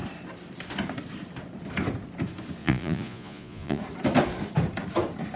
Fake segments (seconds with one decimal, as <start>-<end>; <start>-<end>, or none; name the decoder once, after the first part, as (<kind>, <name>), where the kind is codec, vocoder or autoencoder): 2.6-3.8 (vocoder, Vocos)